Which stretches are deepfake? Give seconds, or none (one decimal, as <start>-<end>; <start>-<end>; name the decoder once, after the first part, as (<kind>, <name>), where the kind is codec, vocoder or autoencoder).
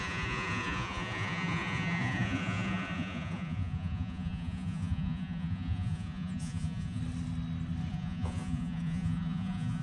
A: 0.0-7.0 (vocoder, Vocos); 7.9-9.8